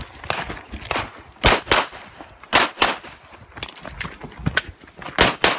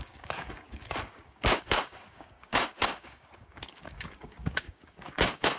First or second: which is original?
first